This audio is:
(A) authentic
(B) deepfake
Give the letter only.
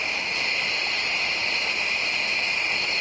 A